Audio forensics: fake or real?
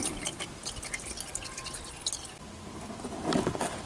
real